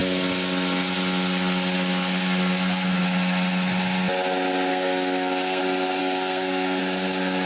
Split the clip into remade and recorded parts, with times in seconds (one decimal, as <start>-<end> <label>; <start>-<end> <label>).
0.0-4.7 recorded; 4.7-5.6 remade; 5.6-6.0 recorded; 6.0-6.8 remade; 6.8-7.5 recorded